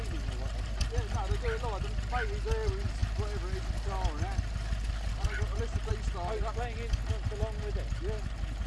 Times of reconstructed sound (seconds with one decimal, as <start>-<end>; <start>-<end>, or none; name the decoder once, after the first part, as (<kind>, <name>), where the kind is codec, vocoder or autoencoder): none